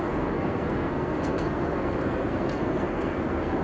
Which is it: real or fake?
fake